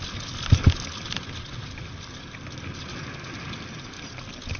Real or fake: real